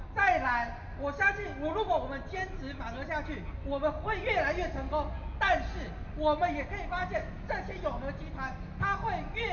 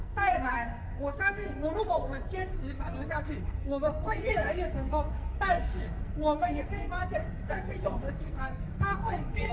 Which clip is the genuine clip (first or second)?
first